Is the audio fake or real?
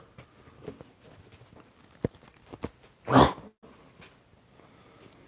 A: real